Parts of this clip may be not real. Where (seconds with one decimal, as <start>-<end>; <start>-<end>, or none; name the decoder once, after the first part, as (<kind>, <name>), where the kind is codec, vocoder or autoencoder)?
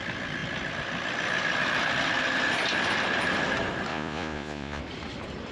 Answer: 3.9-4.8 (vocoder, Vocos)